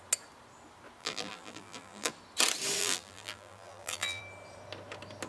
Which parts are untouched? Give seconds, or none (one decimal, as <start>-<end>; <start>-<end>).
0.0-1.0; 2.1-2.8; 4.2-5.3